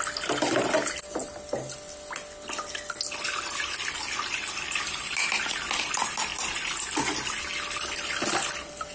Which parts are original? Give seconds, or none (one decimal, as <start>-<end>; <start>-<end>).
0.0-8.9